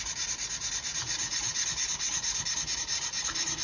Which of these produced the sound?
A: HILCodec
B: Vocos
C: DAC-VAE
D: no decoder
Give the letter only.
D